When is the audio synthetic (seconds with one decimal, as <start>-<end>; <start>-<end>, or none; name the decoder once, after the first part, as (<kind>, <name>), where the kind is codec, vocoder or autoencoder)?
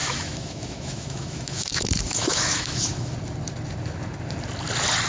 0.0-3.1 (autoencoder, DAC-VAE)